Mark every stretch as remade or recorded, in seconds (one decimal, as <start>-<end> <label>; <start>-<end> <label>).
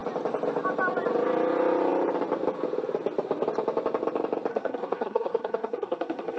0.0-4.5 recorded; 4.5-6.4 remade